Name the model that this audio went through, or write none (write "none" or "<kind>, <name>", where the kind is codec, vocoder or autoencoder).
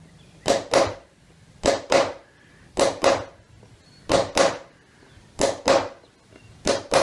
none